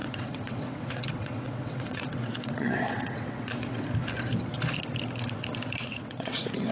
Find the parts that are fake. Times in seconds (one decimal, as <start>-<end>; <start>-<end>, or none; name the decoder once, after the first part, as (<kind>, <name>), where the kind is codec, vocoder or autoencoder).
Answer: 0.0-3.8 (vocoder, WaveNeXt); 5.8-6.7